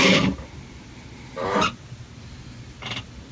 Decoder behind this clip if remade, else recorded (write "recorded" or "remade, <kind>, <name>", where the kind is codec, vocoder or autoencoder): recorded